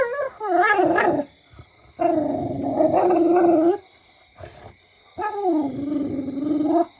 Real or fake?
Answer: real